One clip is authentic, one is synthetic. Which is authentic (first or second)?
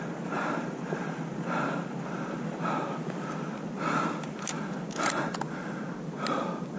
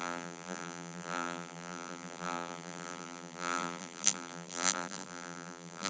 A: first